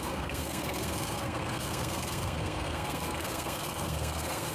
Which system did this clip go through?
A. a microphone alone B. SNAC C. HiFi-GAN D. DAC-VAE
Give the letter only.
B